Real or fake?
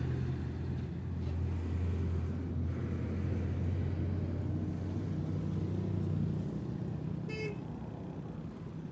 real